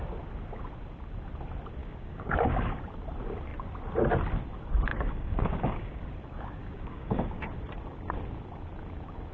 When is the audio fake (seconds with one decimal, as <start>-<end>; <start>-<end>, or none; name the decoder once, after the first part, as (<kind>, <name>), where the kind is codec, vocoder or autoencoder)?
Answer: 1.8-2.8 (codec, DAC); 4.9-6.0; 6.6-7.5